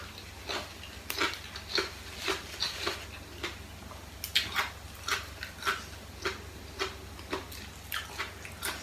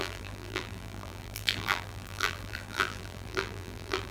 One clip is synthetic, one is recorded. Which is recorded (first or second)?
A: first